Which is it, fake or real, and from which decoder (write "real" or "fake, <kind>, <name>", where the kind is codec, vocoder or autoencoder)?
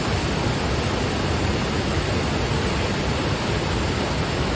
real